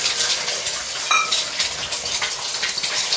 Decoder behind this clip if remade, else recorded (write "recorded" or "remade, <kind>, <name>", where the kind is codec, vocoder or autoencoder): remade, vocoder, BigVGAN v2